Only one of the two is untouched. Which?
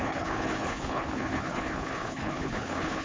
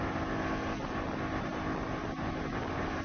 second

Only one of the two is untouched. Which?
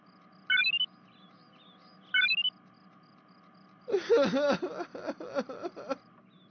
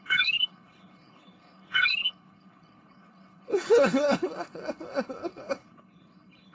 first